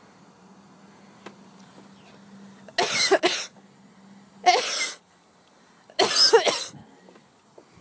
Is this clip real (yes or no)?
yes